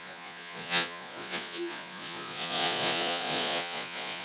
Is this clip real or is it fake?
fake